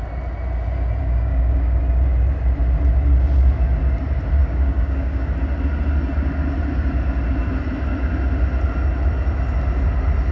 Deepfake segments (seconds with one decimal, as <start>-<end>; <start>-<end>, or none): 1.0-1.8; 4.4-5.3